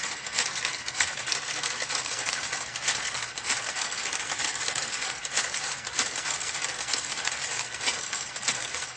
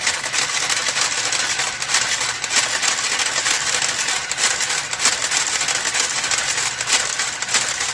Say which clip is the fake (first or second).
first